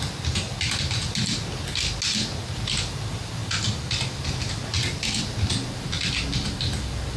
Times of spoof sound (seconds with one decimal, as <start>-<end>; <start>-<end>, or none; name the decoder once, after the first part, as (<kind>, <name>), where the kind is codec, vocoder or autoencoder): none